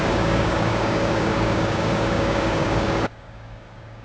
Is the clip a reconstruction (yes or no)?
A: yes